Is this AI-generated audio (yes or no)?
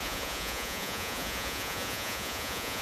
yes